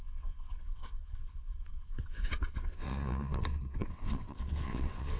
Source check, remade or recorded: remade